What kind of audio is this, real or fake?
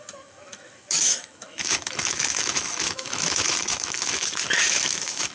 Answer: fake